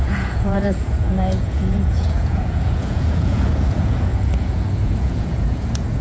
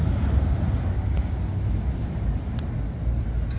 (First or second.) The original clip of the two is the second